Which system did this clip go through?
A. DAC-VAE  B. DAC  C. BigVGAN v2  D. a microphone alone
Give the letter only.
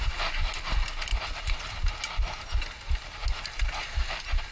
D